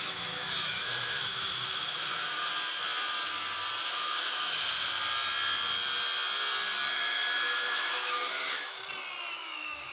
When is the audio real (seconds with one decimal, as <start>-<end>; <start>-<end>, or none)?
2.5-3.9; 4.9-6.9; 8.8-9.3